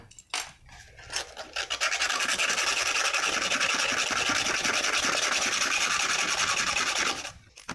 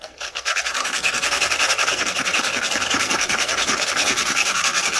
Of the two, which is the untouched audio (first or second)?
first